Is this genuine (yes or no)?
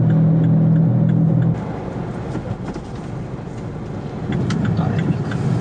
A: yes